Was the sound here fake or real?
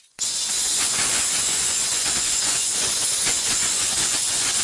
fake